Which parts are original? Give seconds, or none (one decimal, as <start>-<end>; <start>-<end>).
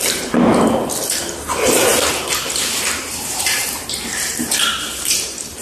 0.5-1.2